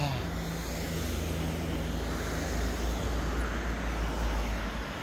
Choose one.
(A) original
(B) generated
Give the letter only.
A